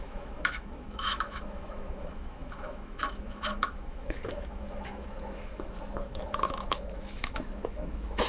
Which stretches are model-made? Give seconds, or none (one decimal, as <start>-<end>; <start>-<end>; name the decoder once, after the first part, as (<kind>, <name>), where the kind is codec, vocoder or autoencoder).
0.0-8.3 (autoencoder, DAC-VAE)